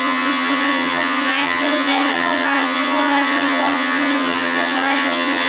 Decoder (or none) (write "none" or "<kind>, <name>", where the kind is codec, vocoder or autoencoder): vocoder, HiFi-GAN